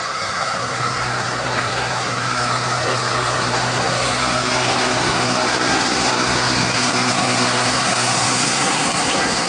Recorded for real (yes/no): no